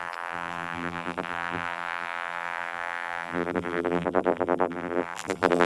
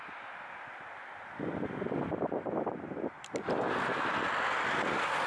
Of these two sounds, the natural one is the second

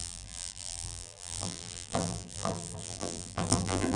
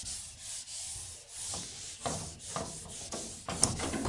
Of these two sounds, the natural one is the second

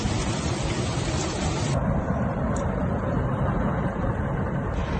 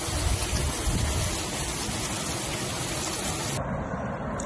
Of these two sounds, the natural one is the second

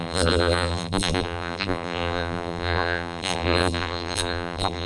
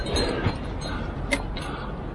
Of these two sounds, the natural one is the second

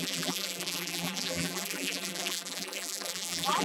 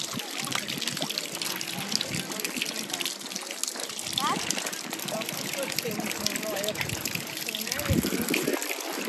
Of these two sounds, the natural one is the second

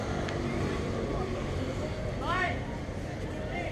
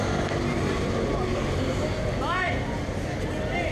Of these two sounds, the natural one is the second